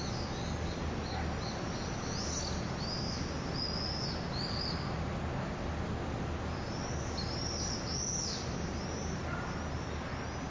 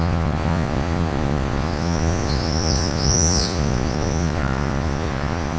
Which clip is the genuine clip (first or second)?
first